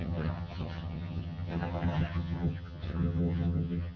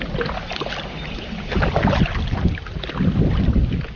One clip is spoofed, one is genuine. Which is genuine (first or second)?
second